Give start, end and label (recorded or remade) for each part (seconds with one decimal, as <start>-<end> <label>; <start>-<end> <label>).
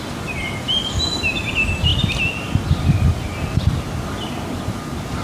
0.0-5.2 recorded